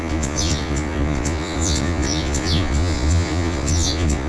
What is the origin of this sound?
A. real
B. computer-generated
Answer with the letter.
B